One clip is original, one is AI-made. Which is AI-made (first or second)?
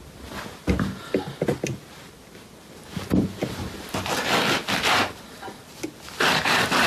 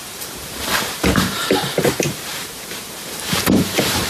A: second